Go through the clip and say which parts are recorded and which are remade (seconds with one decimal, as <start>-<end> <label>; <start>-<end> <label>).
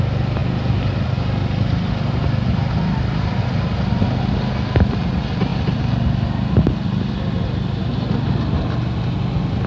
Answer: 0.0-9.7 recorded